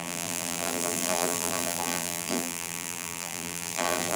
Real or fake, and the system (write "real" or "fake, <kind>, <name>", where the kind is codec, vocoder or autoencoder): fake, vocoder, BigVGAN v2